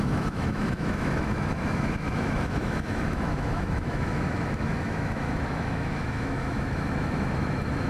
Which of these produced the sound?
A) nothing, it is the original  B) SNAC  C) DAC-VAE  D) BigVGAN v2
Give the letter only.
C